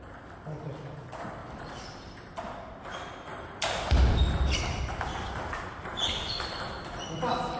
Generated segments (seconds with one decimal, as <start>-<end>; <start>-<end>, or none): 1.4-2.3; 3.3-3.9